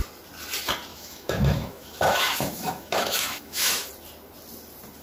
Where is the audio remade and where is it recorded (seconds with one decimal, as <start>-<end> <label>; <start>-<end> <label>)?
0.0-0.9 recorded; 0.9-3.9 remade; 3.9-5.0 recorded